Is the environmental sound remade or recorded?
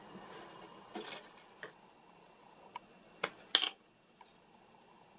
recorded